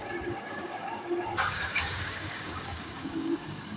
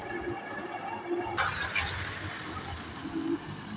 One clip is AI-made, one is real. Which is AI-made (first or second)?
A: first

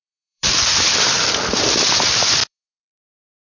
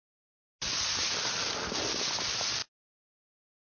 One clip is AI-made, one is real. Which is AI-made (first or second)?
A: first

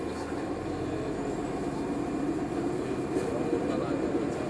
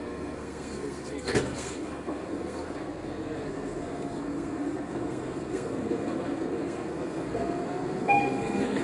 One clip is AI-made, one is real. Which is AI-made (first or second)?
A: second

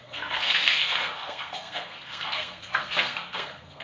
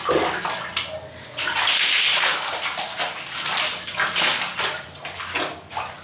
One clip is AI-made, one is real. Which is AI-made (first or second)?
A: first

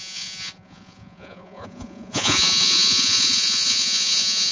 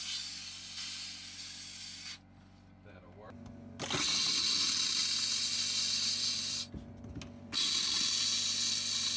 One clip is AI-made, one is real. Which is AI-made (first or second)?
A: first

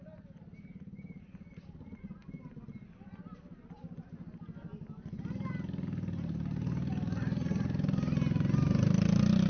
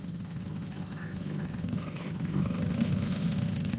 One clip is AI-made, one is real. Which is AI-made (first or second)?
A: second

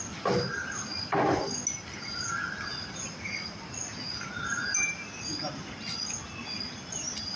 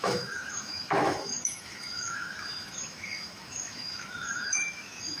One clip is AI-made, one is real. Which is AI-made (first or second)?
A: second